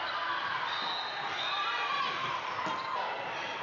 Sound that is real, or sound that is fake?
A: real